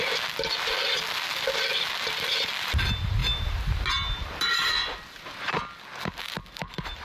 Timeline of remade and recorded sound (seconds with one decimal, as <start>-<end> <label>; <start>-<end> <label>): 0.0-7.0 recorded

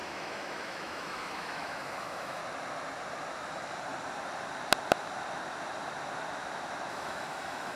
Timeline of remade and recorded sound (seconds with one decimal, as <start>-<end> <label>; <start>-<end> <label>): 0.0-2.4 remade; 2.4-6.9 recorded; 6.9-7.8 remade

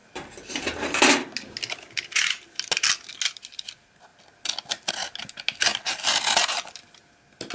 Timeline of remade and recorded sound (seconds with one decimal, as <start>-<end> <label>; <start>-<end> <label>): 0.0-7.5 recorded